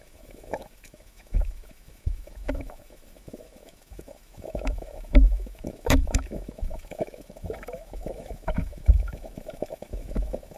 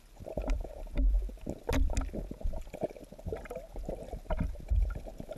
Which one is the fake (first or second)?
first